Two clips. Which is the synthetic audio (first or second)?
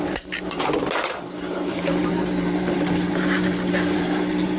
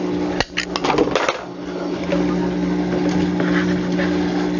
first